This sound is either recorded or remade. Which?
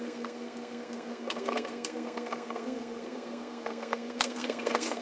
remade